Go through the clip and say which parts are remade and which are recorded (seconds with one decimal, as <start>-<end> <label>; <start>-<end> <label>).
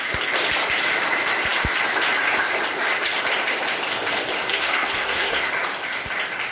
0.0-4.5 recorded; 4.5-5.5 remade; 5.5-6.5 recorded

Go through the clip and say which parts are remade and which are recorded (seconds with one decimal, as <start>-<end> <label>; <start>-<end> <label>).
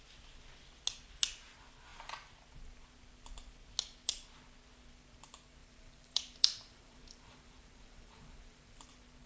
0.0-5.6 recorded; 5.6-8.9 remade; 8.9-9.3 recorded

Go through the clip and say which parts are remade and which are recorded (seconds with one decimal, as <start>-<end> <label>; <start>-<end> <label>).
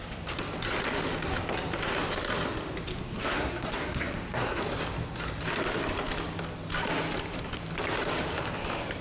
0.0-2.9 recorded; 2.9-4.6 remade; 4.6-9.0 recorded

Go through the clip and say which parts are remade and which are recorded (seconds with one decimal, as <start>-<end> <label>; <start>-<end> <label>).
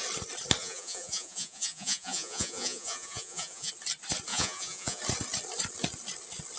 0.0-0.6 recorded; 0.6-3.7 remade; 3.7-4.3 recorded; 4.3-5.0 remade; 5.0-6.6 recorded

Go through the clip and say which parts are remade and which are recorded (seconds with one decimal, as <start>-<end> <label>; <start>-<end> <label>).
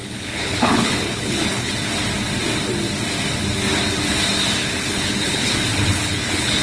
0.0-1.7 remade; 1.7-4.6 recorded; 4.6-6.6 remade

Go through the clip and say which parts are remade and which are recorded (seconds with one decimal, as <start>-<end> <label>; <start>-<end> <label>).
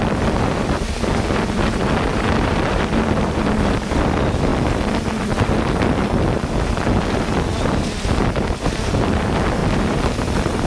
0.0-4.5 remade; 4.5-6.3 recorded; 6.3-10.7 remade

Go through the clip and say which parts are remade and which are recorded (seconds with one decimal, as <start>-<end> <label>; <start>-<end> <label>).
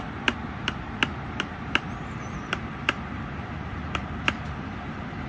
0.0-1.0 recorded; 1.0-4.1 remade; 4.1-5.3 recorded